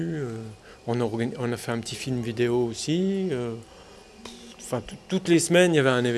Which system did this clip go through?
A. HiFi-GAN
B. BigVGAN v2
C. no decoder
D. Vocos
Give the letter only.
C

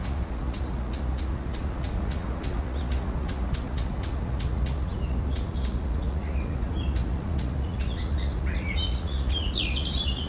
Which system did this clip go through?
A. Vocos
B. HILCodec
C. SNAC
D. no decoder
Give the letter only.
A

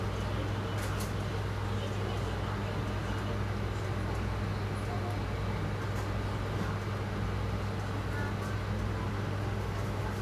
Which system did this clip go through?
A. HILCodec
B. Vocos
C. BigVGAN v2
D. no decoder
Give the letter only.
D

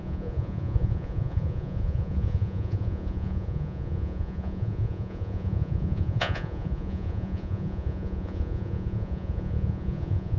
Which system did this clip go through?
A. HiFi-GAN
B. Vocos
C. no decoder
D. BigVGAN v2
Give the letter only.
B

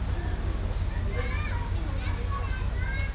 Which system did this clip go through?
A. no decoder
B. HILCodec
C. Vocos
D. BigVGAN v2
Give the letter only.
A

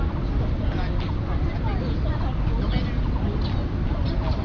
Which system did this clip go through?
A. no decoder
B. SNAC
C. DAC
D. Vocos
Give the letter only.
A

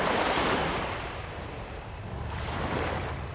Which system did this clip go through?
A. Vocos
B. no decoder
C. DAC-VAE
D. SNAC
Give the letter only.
B